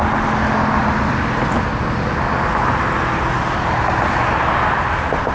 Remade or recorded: recorded